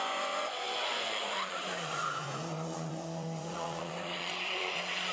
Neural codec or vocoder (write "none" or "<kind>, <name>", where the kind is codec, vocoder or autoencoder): vocoder, Vocos